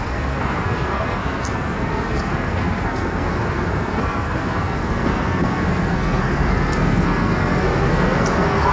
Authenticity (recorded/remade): remade